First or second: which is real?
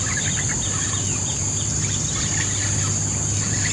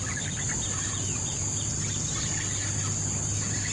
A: second